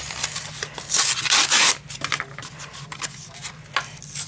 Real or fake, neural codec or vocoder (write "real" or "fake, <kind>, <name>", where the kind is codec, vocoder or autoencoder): real